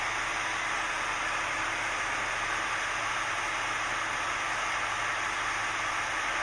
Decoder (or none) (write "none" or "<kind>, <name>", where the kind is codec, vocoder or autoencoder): none